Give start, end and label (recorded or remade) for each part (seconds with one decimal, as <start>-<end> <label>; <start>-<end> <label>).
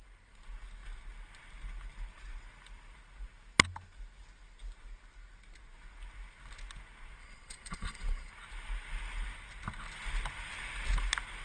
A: 0.0-7.2 recorded; 7.2-8.3 remade; 8.3-11.4 recorded